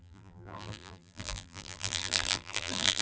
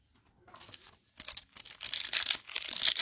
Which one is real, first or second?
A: second